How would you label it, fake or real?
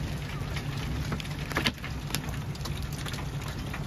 real